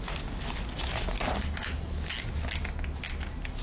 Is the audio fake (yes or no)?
no